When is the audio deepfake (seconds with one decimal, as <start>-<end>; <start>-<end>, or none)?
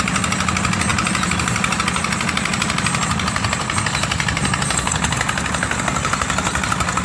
none